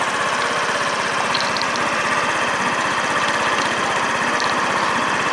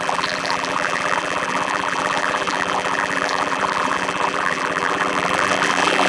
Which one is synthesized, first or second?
second